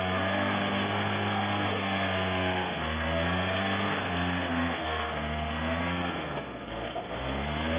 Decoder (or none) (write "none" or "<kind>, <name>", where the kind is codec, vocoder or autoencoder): codec, SNAC